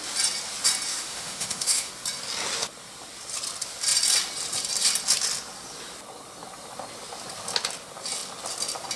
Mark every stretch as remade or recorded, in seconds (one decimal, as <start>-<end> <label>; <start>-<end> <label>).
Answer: 0.0-0.9 recorded; 0.9-1.9 remade; 1.9-9.0 recorded